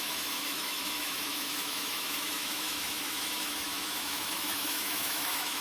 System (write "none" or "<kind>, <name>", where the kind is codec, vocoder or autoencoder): autoencoder, DAC-VAE